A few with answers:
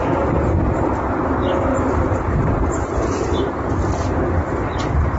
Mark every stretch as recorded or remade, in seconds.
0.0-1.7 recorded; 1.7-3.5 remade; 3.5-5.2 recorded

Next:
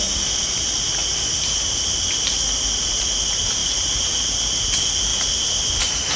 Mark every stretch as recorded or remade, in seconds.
0.0-1.0 recorded; 1.0-2.4 remade; 2.4-3.6 recorded; 3.6-4.2 remade; 4.2-6.2 recorded

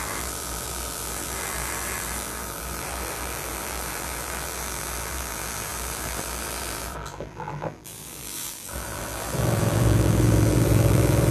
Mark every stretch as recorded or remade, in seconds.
0.0-11.3 remade